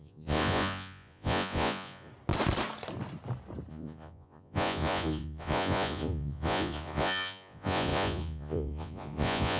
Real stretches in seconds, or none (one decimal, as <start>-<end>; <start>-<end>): 2.1-3.7